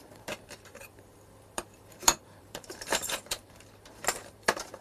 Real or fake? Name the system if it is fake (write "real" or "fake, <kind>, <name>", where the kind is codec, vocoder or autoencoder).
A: fake, vocoder, BigVGAN v2